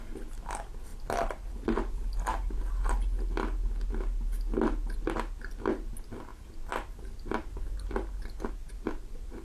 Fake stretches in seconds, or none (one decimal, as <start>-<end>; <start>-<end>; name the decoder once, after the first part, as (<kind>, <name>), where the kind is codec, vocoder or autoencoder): none